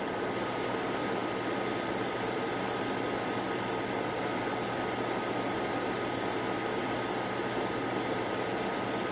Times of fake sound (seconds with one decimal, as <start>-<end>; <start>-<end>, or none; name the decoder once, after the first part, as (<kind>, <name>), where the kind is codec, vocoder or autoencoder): none